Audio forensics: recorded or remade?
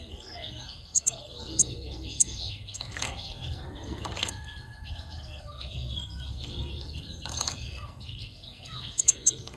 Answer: remade